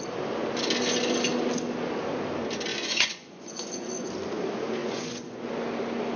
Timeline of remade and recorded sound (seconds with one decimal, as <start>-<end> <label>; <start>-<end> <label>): 0.0-2.7 recorded; 2.7-4.1 remade; 4.1-4.8 recorded; 4.8-5.4 remade; 5.4-6.2 recorded